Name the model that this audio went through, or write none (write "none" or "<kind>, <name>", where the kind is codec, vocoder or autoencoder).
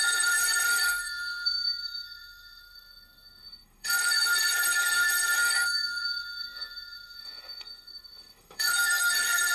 codec, SNAC